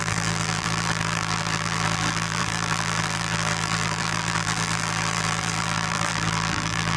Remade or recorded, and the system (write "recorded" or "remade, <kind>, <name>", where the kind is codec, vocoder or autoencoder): remade, vocoder, BigVGAN v2